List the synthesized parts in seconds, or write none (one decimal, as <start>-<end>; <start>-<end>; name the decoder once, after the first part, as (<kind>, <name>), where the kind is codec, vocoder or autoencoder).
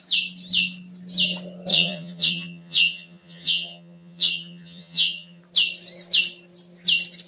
1.7-5.4 (vocoder, HiFi-GAN)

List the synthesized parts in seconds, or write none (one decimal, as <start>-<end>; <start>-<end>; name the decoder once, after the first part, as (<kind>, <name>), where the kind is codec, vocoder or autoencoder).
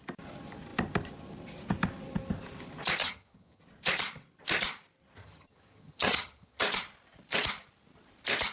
3.0-3.6 (vocoder, HiFi-GAN); 5.2-6.6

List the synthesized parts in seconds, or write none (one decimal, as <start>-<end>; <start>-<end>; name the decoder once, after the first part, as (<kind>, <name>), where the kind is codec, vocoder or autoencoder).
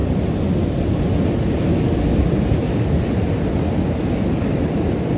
none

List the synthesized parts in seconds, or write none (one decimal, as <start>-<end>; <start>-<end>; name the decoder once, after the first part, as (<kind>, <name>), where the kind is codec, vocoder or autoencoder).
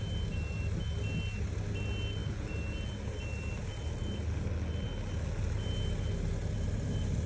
none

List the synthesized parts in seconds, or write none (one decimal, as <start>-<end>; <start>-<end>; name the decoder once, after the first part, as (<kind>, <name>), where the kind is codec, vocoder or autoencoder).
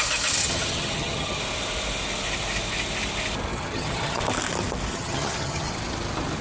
0.4-1.4 (vocoder, HiFi-GAN); 3.5-4.2; 4.9-5.7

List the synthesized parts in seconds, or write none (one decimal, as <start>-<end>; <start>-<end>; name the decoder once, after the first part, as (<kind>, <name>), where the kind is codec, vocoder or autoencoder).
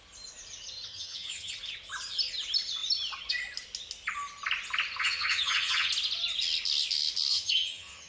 0.9-1.5 (vocoder, HiFi-GAN); 5.0-5.9; 7.3-8.1